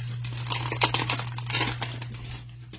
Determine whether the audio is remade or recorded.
recorded